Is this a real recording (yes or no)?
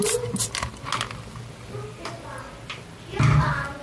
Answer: yes